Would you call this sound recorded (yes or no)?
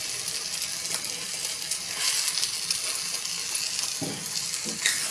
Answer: yes